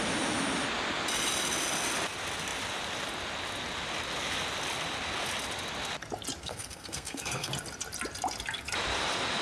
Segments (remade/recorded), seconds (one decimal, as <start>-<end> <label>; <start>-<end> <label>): 0.0-6.4 recorded; 6.4-7.5 remade; 7.5-9.4 recorded